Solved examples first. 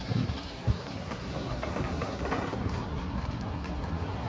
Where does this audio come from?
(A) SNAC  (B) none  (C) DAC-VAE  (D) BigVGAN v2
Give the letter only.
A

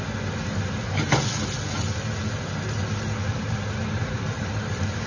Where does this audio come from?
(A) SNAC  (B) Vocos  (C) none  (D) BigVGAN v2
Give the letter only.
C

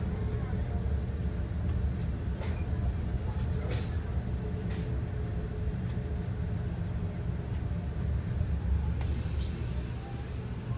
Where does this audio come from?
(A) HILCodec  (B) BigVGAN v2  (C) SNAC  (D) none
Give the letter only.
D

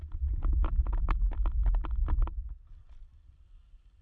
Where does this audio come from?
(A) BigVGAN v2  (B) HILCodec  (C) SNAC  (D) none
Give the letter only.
D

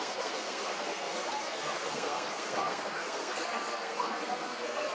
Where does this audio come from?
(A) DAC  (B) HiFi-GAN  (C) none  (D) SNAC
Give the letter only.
D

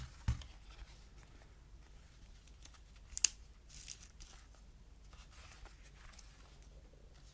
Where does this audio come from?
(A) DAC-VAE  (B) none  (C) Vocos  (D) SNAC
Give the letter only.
B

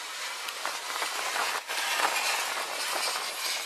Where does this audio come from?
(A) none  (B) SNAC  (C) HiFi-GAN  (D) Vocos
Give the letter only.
A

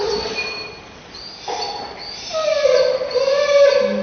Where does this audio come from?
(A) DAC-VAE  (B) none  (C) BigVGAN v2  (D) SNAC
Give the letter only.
B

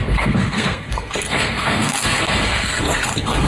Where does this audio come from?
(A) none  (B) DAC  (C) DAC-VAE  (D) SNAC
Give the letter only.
D